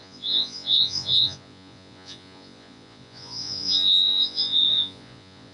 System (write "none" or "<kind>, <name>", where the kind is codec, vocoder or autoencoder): vocoder, Vocos